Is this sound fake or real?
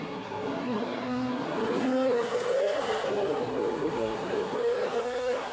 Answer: fake